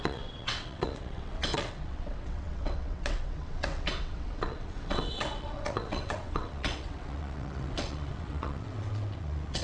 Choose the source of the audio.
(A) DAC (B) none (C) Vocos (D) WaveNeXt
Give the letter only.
D